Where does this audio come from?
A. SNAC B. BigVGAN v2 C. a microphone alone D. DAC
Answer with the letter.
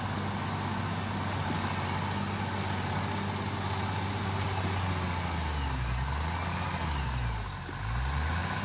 C